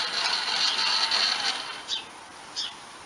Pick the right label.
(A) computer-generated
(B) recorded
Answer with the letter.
B